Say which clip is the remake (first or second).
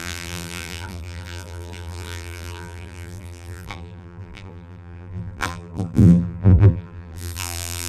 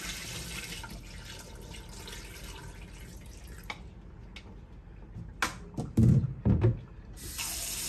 first